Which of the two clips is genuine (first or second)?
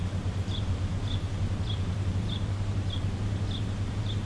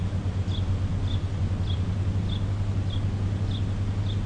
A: second